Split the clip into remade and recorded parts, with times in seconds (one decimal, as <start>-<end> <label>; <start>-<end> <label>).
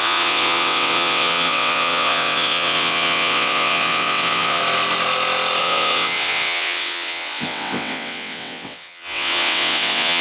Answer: 0.0-4.6 remade; 4.6-5.6 recorded; 5.6-10.2 remade